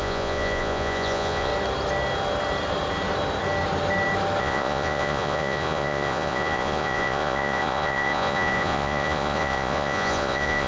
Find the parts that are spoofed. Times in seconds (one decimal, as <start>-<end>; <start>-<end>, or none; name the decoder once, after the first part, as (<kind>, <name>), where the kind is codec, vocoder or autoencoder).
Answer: 0.0-1.5 (vocoder, Vocos); 4.4-10.7